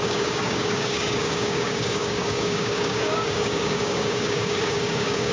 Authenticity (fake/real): fake